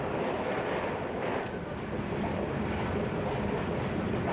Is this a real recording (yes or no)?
yes